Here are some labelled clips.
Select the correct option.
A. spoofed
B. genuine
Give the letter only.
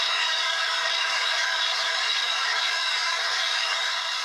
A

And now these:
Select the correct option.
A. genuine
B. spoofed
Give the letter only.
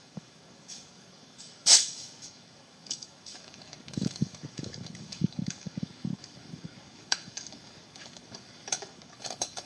B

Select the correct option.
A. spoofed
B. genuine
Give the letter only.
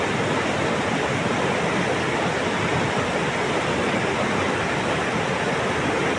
B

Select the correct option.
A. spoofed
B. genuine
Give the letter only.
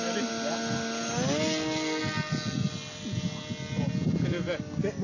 B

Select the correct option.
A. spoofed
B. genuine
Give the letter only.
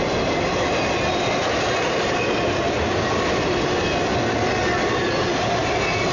B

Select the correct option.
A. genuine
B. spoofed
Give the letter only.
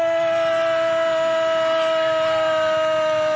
A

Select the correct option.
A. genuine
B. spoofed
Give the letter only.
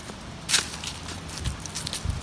A